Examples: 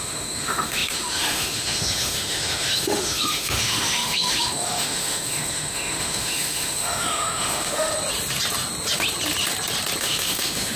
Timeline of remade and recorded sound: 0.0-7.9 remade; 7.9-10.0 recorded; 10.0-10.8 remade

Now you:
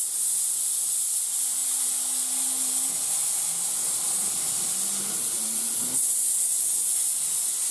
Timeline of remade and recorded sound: 0.0-7.7 recorded

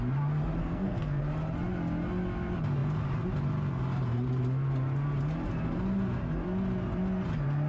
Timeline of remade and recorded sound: 0.0-0.6 recorded; 0.6-1.2 remade; 1.2-7.7 recorded

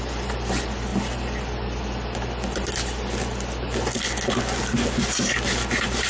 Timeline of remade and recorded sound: 0.0-6.1 recorded

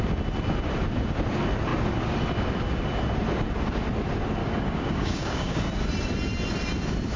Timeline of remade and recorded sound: 0.0-4.4 recorded; 4.4-5.6 remade; 5.6-7.2 recorded

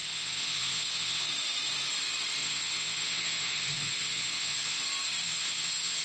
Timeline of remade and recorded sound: 0.0-1.3 remade; 1.3-2.4 recorded; 2.4-4.8 remade; 4.8-5.2 recorded; 5.2-6.0 remade

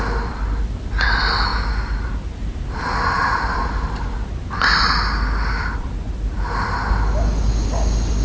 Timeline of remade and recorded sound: 0.0-8.2 recorded

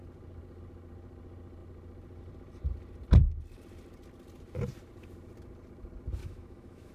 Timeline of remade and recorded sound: 0.0-6.2 recorded; 6.2-6.9 remade